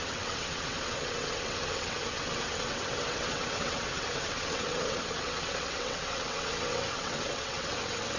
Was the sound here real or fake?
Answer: fake